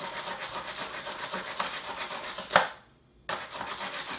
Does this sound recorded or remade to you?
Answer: recorded